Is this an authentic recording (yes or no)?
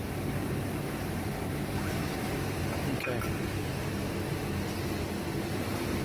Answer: yes